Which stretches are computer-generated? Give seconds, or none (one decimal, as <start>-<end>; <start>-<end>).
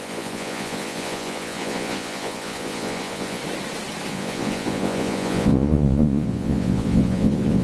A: 0.0-3.4; 4.1-7.6